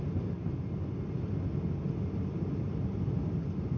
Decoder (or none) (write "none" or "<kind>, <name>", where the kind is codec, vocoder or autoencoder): none